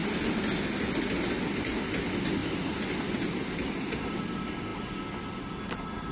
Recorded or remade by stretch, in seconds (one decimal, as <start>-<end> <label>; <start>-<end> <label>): 0.0-2.4 recorded; 2.4-3.5 remade; 3.5-6.1 recorded

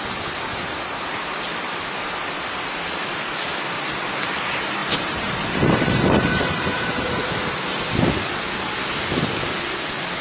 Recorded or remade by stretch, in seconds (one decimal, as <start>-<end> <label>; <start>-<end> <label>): 0.0-4.8 recorded; 4.8-7.4 remade; 7.4-10.2 recorded